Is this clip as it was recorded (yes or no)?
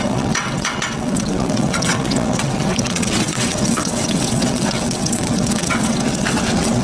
no